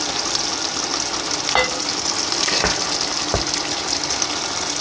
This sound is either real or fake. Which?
real